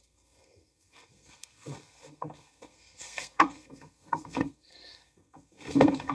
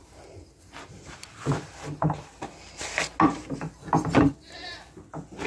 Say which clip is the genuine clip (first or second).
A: second